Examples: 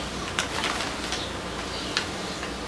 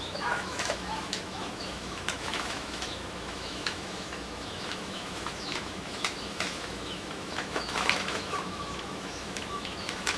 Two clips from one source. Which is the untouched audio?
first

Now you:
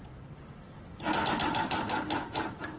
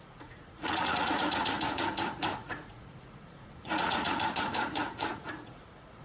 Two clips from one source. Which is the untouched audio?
first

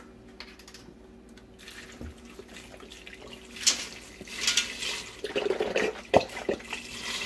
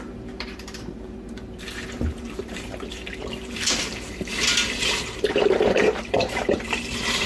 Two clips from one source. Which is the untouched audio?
first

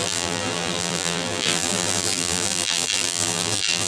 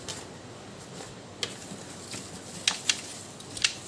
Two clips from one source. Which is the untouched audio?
second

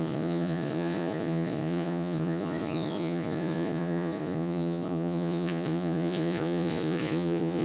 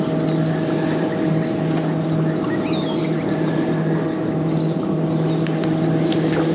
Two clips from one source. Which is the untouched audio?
second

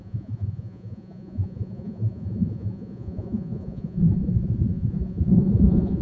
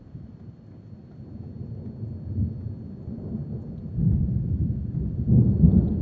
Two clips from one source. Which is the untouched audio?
second